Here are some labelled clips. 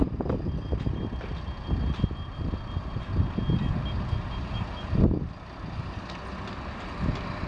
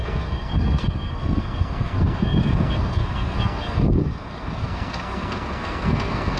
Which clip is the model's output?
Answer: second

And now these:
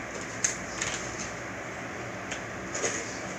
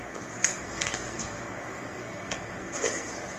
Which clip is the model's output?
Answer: second